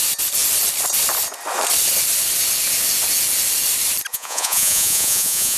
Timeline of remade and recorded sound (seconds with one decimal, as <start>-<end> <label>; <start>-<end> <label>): 0.0-4.1 recorded; 4.1-5.6 remade